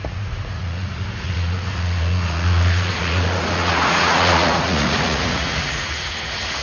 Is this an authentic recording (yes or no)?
no